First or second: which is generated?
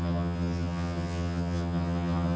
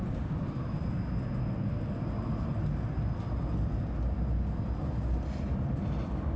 first